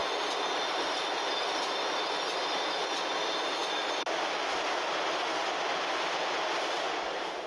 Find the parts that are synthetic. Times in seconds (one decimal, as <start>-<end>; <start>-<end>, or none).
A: none